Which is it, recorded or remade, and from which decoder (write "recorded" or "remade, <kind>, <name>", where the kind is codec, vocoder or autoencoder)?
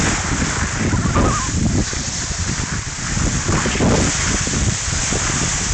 recorded